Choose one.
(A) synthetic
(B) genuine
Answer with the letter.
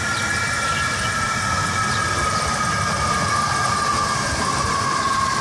B